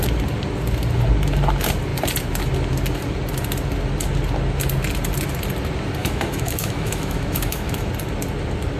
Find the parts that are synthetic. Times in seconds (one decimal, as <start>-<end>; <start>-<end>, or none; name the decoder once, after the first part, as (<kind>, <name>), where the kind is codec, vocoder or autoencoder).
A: 6.0-7.9 (autoencoder, DAC-VAE)